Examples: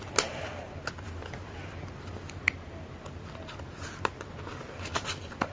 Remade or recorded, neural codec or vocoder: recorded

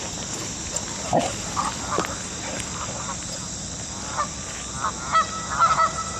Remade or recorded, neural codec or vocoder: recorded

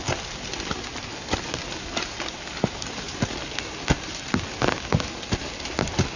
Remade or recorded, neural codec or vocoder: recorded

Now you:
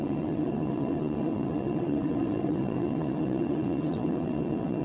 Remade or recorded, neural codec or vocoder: remade, vocoder, WaveNeXt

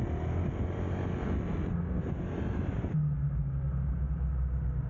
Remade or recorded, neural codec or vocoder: recorded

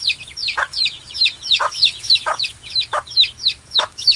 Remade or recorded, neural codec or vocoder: remade, autoencoder, DAC-VAE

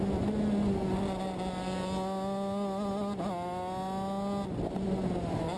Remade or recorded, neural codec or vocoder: recorded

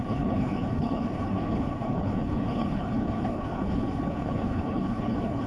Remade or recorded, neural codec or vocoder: remade, codec, HILCodec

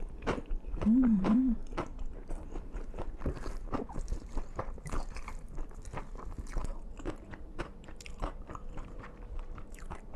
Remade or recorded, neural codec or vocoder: remade, vocoder, BigVGAN v2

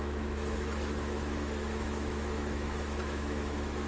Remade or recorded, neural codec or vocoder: remade, autoencoder, DAC-VAE